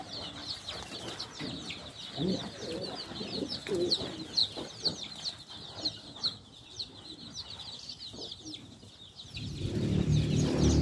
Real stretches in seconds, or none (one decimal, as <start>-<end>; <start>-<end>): 0.0-10.8